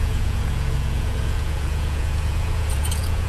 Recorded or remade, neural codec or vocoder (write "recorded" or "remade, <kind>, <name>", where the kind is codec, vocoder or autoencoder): remade, vocoder, Vocos